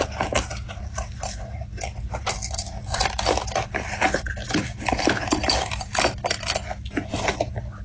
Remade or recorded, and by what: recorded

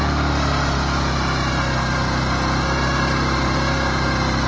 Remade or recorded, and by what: recorded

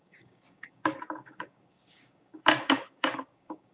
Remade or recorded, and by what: remade, codec, DAC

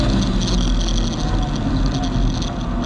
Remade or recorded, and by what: recorded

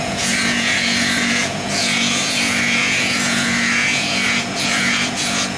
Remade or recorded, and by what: remade, vocoder, Vocos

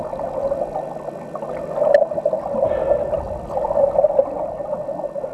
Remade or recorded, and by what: recorded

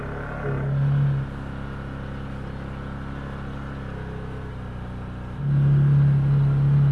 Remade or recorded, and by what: recorded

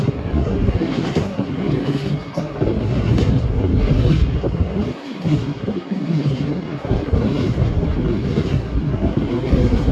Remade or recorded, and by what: remade, codec, SNAC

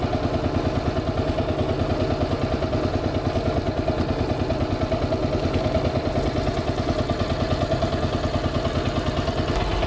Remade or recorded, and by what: recorded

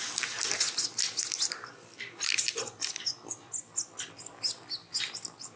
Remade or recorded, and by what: recorded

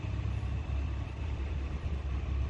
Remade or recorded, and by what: remade, vocoder, BigVGAN v2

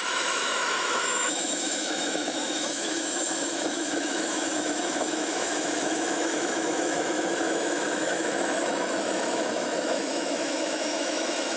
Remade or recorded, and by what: remade, autoencoder, DAC-VAE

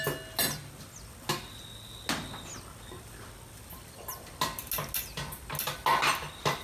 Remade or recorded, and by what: recorded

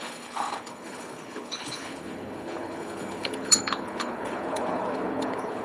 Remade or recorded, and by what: remade, codec, HILCodec